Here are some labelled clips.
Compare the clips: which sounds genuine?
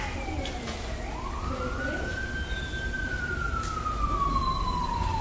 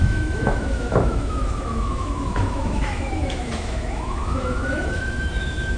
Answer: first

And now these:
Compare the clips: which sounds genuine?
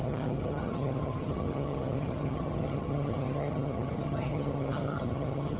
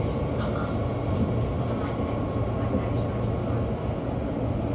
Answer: second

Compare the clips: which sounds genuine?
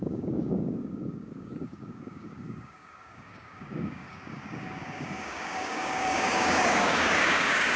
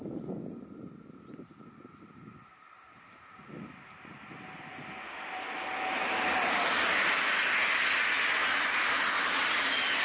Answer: second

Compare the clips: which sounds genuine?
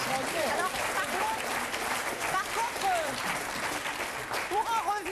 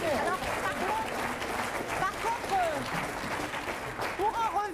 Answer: second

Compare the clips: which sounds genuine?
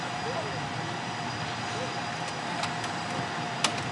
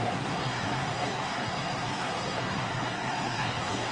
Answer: first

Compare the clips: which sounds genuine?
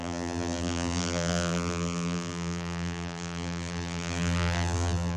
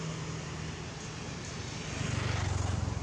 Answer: second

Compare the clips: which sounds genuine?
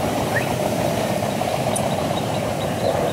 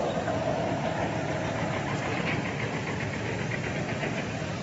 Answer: second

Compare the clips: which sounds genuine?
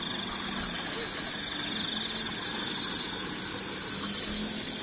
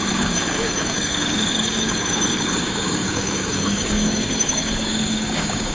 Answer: first